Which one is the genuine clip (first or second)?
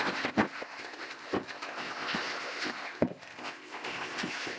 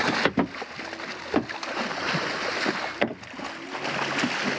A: second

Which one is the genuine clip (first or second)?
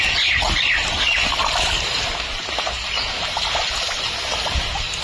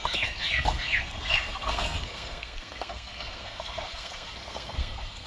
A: first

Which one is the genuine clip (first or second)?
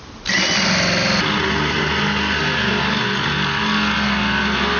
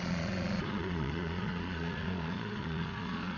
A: first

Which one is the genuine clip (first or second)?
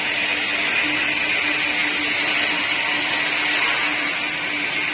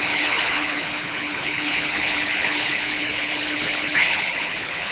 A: first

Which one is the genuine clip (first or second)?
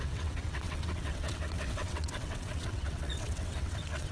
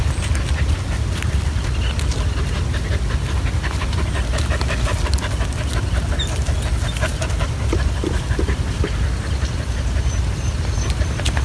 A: second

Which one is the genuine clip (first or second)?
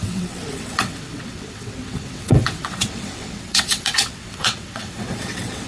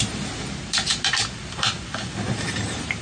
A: second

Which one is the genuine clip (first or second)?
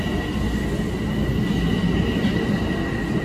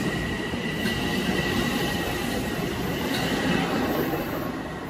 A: first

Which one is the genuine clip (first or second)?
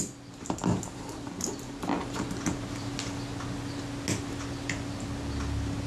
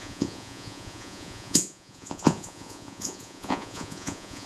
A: first